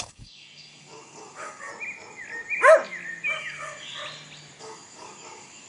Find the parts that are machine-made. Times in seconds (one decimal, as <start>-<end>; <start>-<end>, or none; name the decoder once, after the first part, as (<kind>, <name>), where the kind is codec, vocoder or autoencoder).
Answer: 0.0-1.7 (codec, DAC); 3.4-4.0; 4.6-5.7